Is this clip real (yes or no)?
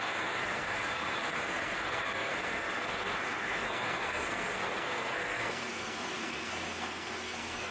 no